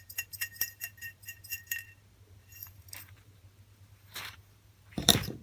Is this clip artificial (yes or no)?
yes